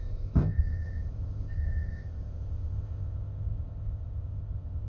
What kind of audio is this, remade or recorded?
remade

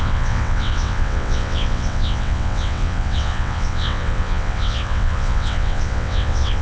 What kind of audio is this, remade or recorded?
remade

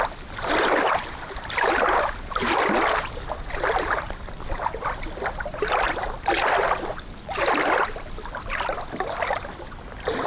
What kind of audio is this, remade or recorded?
remade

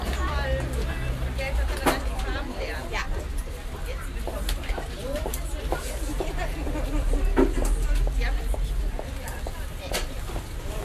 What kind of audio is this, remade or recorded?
remade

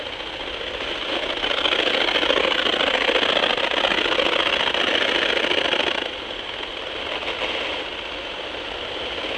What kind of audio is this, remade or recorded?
recorded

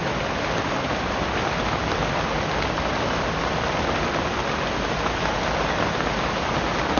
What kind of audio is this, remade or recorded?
recorded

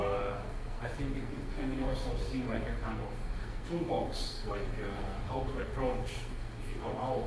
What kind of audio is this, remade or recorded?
remade